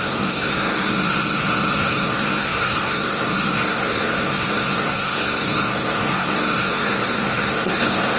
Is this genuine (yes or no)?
no